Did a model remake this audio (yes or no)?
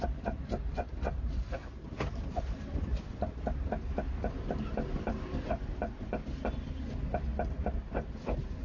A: no